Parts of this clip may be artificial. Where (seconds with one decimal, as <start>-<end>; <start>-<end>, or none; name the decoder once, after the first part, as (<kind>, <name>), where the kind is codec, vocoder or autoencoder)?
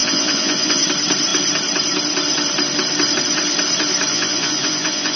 0.0-0.8 (vocoder, Vocos); 4.1-5.2